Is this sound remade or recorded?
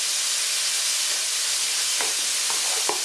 recorded